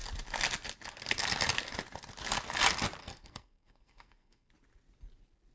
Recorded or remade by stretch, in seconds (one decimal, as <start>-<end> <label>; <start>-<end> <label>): 0.0-3.0 recorded; 3.0-4.5 remade; 4.5-5.5 recorded